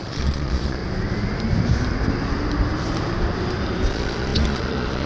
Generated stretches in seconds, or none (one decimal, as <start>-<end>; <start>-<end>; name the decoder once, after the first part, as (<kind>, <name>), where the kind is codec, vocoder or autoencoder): 0.0-0.8 (vocoder, Vocos); 3.9-5.1